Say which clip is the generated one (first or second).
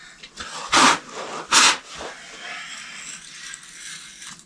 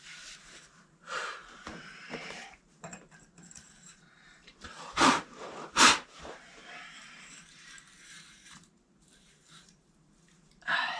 second